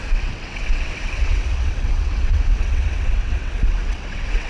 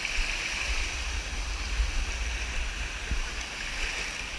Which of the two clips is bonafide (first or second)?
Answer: second